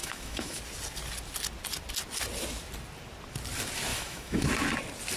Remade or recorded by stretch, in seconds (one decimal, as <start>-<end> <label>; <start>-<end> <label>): 0.0-0.6 remade; 0.6-3.9 recorded; 3.9-4.5 remade; 4.5-5.2 recorded